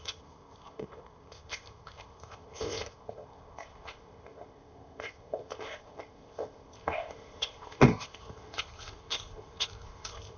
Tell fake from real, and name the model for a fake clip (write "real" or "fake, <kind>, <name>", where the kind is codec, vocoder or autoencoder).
fake, codec, ZipCodec